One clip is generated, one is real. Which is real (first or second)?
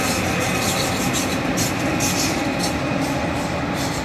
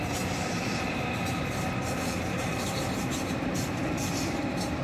first